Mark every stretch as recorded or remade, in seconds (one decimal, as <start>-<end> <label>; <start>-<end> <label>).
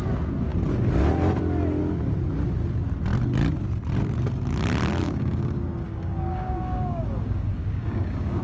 0.0-5.0 recorded; 5.0-8.4 remade